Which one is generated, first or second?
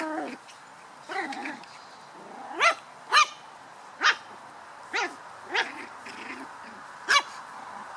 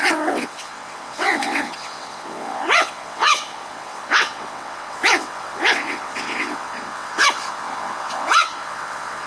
second